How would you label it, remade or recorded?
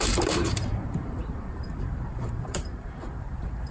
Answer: remade